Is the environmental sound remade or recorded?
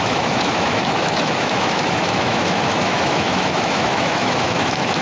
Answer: remade